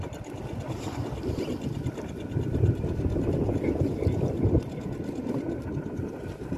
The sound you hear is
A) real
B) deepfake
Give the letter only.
A